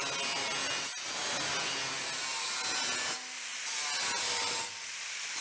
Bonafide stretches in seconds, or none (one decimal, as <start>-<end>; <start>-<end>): 0.0-5.4

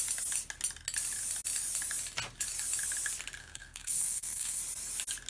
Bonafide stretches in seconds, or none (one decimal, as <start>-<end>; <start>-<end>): 0.0-3.4; 4.6-5.3

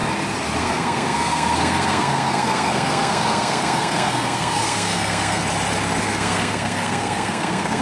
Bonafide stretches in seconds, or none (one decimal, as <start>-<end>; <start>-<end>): 0.0-0.6; 5.4-6.0